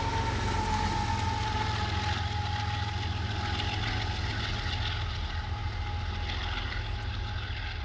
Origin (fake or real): real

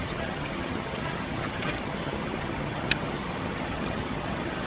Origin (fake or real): fake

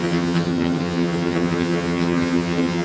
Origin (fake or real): fake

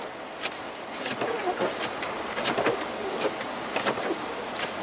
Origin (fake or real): real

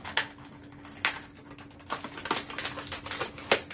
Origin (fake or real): real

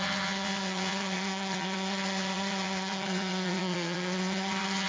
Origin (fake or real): fake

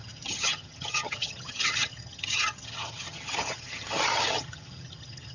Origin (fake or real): fake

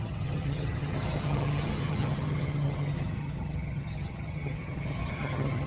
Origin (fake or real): fake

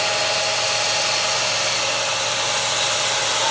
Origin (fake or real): real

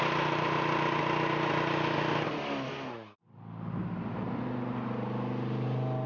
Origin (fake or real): real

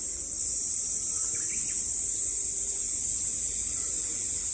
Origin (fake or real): real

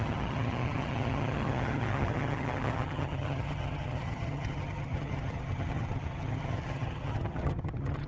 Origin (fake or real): fake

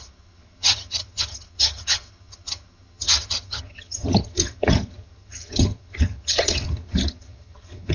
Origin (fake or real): fake